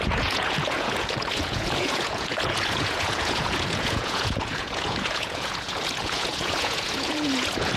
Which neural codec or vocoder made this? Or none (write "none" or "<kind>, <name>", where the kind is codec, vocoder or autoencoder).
vocoder, Vocos